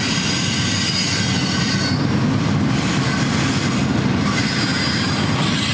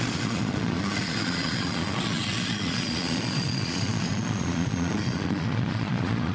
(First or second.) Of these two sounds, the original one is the first